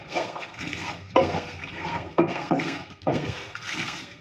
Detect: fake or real fake